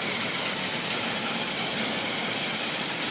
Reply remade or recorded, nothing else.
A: recorded